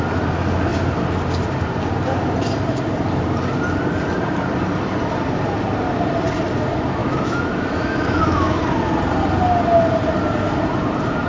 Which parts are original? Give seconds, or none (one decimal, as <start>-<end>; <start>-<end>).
0.0-7.0; 8.6-11.3